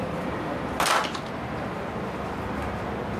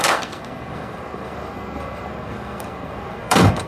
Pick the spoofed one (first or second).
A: second